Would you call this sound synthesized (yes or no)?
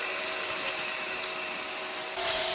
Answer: yes